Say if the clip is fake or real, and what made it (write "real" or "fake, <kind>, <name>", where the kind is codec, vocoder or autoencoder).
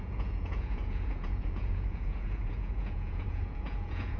fake, vocoder, Vocos